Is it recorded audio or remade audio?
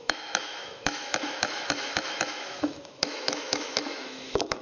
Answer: remade